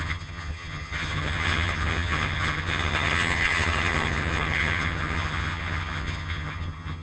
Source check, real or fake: fake